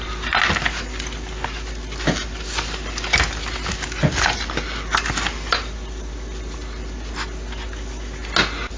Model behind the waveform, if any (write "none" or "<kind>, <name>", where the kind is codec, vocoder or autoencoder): none